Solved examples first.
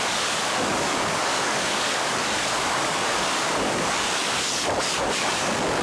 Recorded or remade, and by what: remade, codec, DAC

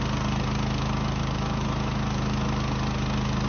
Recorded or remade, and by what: recorded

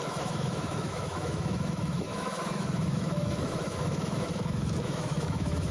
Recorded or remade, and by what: remade, autoencoder, DAC-VAE